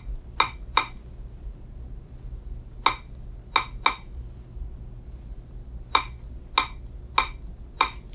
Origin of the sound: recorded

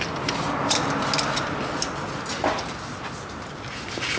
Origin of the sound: recorded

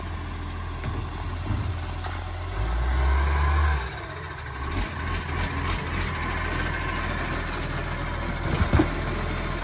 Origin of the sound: recorded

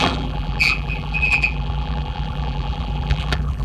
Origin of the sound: remade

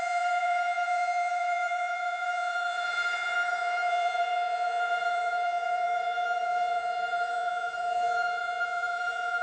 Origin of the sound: remade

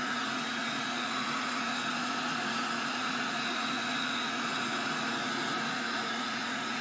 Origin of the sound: remade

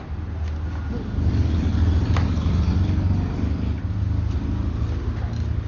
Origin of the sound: recorded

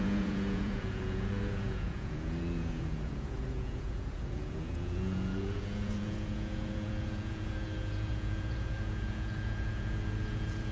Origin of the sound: remade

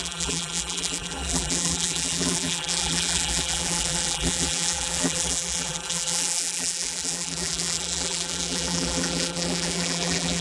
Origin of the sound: remade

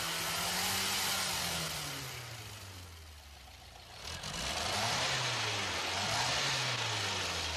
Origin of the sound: recorded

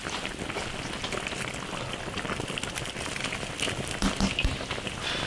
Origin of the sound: recorded